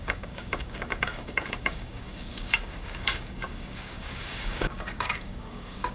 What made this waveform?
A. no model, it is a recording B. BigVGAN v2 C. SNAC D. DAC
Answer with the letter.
D